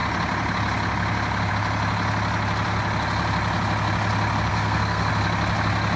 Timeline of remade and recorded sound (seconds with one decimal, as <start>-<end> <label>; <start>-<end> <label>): 0.0-4.5 recorded; 4.5-5.1 remade; 5.1-6.0 recorded

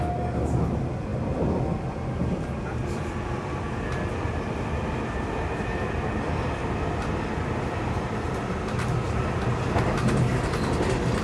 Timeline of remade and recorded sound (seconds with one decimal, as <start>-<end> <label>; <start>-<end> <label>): 0.0-2.8 recorded; 2.8-3.6 remade; 3.6-11.2 recorded

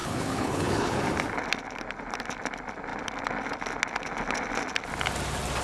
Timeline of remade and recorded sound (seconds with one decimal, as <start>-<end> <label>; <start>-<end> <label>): 0.0-1.0 remade; 1.0-5.6 recorded